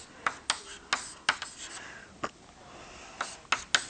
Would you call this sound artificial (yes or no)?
no